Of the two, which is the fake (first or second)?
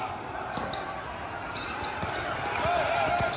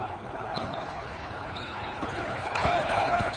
second